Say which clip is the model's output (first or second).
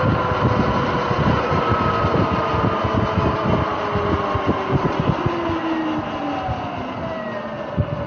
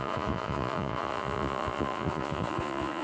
second